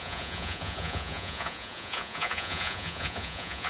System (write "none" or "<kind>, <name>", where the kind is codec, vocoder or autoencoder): vocoder, Vocos